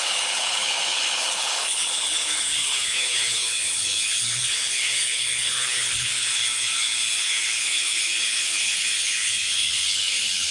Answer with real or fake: fake